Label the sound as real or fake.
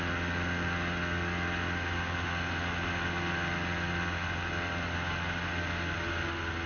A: real